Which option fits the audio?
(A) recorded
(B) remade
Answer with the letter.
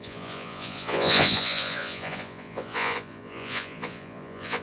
B